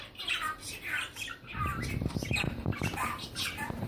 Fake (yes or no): no